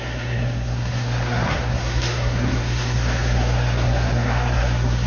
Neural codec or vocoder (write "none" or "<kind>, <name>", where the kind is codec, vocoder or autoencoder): codec, SNAC